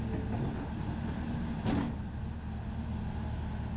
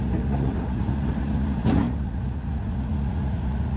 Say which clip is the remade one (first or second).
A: second